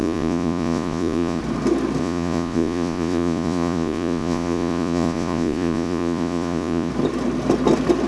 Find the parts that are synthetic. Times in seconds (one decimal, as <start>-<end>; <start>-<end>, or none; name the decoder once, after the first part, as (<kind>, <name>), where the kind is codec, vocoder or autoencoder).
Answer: 0.0-1.4 (vocoder, Vocos); 2.0-6.9